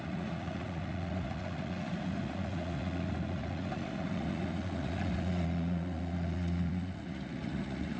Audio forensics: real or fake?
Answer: fake